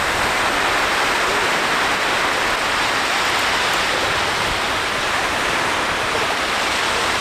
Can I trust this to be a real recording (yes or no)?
yes